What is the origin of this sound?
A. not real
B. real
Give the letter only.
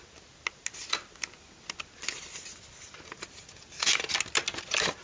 B